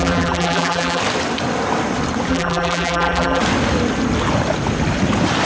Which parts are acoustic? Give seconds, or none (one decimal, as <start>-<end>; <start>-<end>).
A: 1.0-2.3; 3.4-5.5